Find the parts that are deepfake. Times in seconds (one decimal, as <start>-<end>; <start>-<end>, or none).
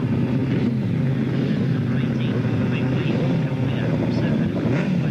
none